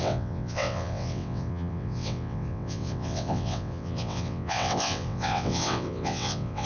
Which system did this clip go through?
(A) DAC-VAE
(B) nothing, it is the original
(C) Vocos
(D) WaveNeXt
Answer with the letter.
D